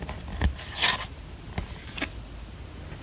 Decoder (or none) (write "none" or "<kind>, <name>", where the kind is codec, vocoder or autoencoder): none